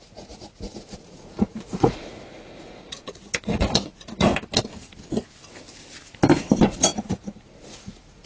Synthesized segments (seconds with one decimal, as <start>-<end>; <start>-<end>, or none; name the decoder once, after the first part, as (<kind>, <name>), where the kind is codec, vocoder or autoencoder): 0.0-4.3 (vocoder, Vocos); 7.0-8.3